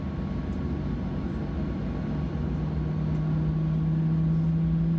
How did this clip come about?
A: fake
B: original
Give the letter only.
B